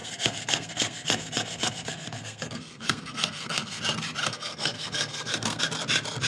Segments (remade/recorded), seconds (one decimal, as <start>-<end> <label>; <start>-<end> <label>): 0.0-3.8 remade; 3.8-4.2 recorded; 4.2-5.6 remade; 5.6-6.3 recorded